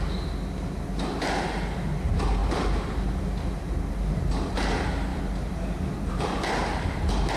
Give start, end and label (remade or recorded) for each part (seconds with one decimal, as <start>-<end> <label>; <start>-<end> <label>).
0.0-7.4 recorded